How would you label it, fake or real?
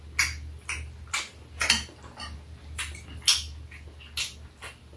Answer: real